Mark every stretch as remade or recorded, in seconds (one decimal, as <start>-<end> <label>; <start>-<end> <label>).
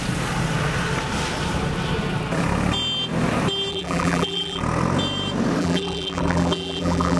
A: 0.0-3.7 recorded; 3.7-4.6 remade; 4.6-5.6 recorded; 5.6-7.2 remade